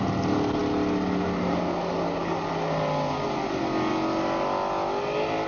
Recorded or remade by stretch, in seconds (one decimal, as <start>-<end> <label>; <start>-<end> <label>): 0.0-5.5 recorded